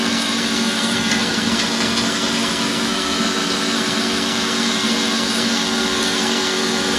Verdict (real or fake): fake